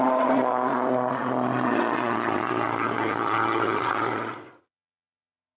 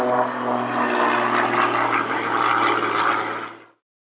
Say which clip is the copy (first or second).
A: first